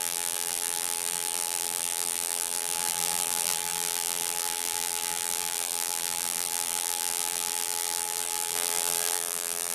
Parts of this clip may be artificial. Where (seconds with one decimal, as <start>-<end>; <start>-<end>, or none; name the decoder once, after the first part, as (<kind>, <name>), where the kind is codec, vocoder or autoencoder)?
0.0-9.7 (vocoder, BigVGAN v2)

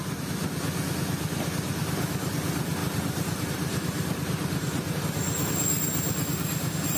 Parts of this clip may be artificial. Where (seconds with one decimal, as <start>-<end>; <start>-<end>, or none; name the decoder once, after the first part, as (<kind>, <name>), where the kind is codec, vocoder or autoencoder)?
2.8-5.0 (vocoder, BigVGAN v2)

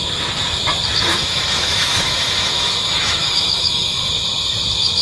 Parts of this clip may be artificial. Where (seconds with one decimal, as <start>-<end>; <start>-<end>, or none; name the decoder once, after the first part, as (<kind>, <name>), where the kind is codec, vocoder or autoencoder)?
1.1-4.1 (autoencoder, DAC-VAE)

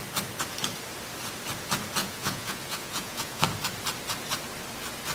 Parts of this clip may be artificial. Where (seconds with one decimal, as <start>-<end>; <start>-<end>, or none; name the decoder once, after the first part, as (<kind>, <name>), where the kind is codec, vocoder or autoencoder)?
2.0-3.4 (vocoder, Vocos)